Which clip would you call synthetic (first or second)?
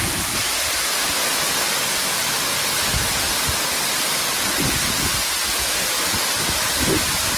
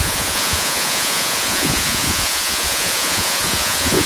second